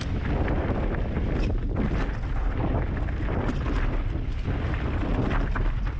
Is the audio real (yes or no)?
no